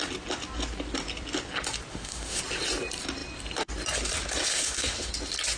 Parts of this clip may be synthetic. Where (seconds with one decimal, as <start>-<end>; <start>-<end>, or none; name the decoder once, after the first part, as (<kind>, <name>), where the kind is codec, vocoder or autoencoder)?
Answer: 1.9-2.4 (autoencoder, DAC-VAE); 4.5-5.1